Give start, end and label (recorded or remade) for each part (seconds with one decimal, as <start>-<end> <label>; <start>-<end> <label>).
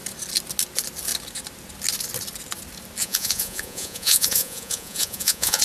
0.0-3.0 recorded; 3.0-5.6 remade